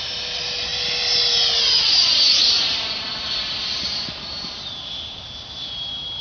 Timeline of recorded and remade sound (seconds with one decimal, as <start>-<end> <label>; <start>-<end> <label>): 0.0-6.2 recorded